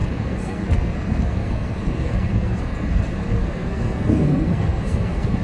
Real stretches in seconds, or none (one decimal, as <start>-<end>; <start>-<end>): none

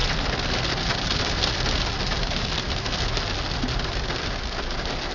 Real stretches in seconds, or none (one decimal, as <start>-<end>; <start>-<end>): 0.0-5.1